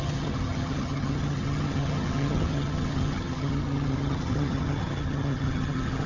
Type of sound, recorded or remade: remade